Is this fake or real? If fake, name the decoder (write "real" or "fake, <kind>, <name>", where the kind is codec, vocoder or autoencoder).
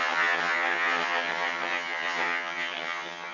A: fake, vocoder, HiFi-GAN